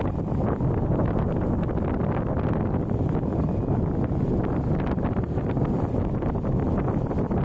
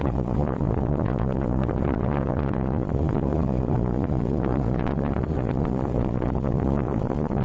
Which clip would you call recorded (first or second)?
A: first